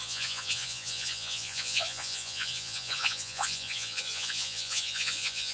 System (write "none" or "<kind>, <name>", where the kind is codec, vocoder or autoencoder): vocoder, Vocos